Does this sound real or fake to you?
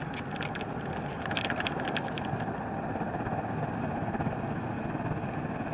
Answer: real